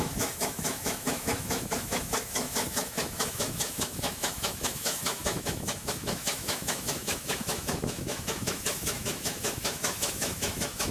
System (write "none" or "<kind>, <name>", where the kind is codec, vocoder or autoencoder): autoencoder, DAC-VAE